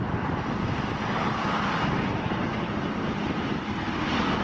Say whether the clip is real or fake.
real